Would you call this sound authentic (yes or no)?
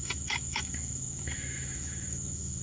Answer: no